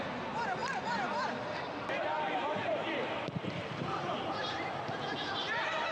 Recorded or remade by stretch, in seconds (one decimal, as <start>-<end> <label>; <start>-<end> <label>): 0.0-2.4 recorded; 2.4-4.7 remade; 4.7-5.9 recorded

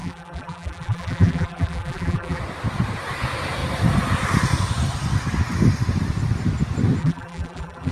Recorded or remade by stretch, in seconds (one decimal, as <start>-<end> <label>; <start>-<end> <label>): 0.0-2.4 remade; 2.4-7.0 recorded; 7.0-7.9 remade